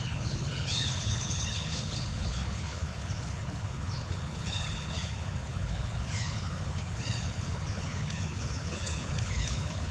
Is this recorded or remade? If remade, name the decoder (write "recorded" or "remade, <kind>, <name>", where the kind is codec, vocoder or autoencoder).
remade, codec, HILCodec